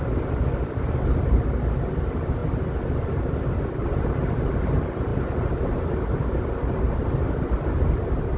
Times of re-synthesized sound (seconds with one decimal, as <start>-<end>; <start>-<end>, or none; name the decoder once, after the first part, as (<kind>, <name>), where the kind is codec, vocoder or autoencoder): none